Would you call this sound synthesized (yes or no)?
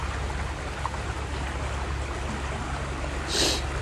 no